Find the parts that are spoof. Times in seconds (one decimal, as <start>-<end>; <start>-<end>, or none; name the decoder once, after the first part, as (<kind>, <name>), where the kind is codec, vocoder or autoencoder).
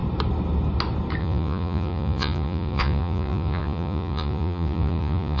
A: 1.2-5.4 (vocoder, Vocos)